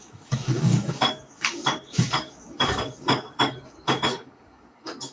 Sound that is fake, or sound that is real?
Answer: fake